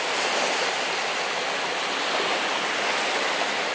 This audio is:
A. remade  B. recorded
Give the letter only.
B